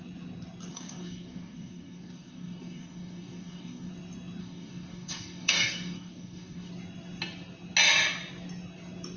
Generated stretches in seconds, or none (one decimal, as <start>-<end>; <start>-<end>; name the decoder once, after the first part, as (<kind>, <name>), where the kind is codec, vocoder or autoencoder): 0.7-3.9 (codec, DAC); 4.4-6.7